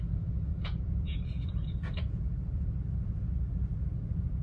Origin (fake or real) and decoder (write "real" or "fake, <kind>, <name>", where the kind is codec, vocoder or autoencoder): fake, vocoder, Vocos